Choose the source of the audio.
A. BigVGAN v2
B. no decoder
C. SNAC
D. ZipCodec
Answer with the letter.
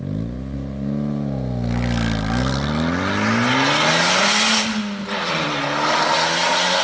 B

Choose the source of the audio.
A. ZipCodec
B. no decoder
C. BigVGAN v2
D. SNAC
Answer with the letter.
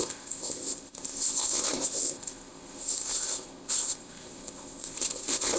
A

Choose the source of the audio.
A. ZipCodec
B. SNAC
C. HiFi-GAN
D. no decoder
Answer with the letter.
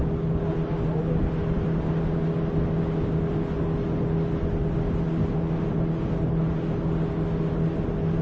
D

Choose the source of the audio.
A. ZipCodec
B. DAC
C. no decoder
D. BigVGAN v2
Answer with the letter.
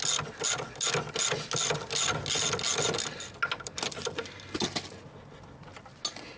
C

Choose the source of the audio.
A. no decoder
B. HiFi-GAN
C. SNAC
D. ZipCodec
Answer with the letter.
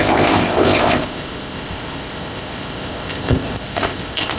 D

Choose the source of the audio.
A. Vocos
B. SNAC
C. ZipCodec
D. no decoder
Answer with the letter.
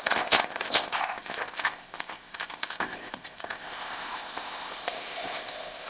C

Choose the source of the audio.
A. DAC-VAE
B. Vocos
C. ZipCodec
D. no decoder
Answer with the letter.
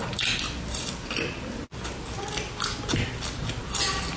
D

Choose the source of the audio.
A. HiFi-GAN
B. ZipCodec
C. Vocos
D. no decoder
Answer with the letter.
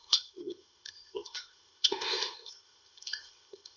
B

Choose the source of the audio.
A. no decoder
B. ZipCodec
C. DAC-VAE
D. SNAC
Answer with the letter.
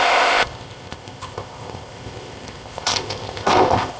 B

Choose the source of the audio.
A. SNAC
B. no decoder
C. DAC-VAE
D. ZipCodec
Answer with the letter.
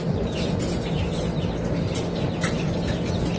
B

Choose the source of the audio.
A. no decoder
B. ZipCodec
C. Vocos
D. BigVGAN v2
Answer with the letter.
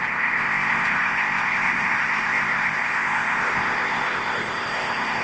B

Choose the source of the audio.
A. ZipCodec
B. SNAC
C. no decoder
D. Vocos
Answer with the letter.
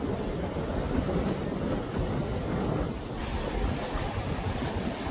C